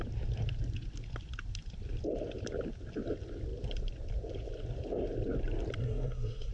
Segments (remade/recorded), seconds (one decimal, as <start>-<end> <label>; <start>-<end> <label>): 0.0-5.8 recorded; 5.8-6.5 remade